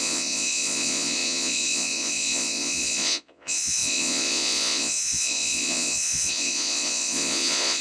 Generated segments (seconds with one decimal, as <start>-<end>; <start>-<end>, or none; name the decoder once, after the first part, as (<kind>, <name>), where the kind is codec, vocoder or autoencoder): 0.0-7.8 (vocoder, Vocos)